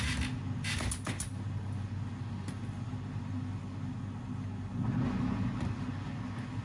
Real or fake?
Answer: real